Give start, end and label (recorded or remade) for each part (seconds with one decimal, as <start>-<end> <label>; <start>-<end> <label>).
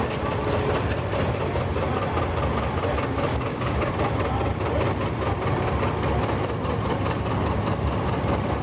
0.0-3.3 recorded; 3.3-3.9 remade; 3.9-8.6 recorded